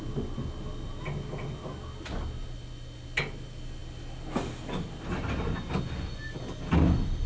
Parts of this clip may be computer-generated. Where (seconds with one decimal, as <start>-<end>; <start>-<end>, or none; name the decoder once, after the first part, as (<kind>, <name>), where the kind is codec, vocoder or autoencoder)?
none